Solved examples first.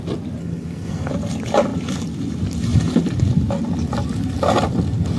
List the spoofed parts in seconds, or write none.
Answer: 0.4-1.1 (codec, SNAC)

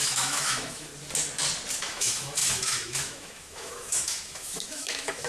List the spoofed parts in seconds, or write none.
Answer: 0.0-0.9 (autoencoder, DAC-VAE); 1.8-5.3

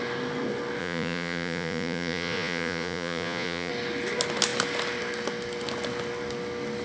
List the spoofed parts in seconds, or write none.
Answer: 0.8-3.7 (vocoder, Vocos)

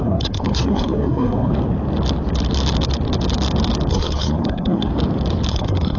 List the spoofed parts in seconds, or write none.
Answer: 0.0-1.5 (codec, SNAC); 3.9-4.9; 5.5-6.0

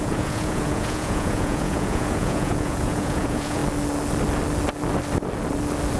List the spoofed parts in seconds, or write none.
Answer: 0.0-3.6 (vocoder, Vocos)

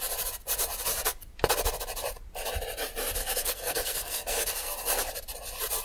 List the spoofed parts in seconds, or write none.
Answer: 3.2-5.1 (codec, SNAC)